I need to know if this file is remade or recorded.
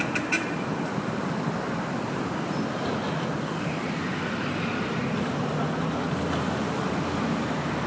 recorded